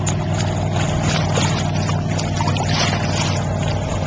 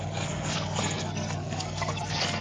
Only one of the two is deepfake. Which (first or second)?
second